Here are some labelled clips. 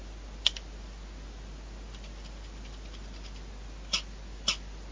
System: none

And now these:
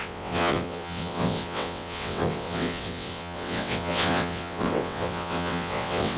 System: vocoder, WaveNeXt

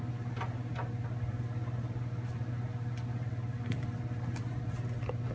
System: none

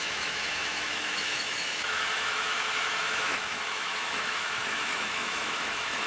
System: autoencoder, DAC-VAE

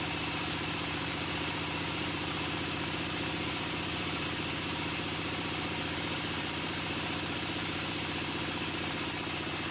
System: vocoder, BigVGAN v2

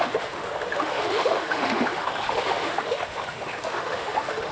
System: autoencoder, DAC-VAE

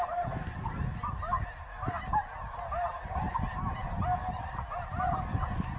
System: none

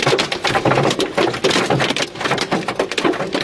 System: none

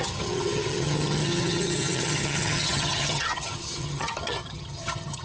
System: vocoder, HiFi-GAN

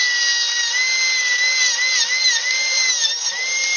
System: none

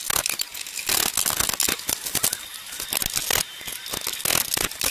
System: none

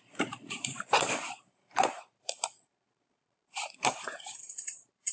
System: vocoder, BigVGAN v2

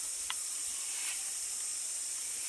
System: none